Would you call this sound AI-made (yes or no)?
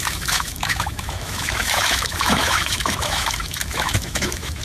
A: yes